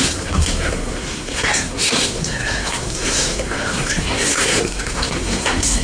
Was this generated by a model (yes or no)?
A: yes